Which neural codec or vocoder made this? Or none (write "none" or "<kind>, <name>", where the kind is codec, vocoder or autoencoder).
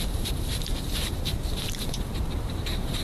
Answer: vocoder, BigVGAN v2